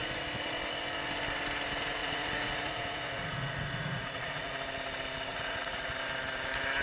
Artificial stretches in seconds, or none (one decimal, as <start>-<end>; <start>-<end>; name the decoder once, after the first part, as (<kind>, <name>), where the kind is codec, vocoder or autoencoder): 2.0-4.5 (vocoder, Vocos); 5.3-5.9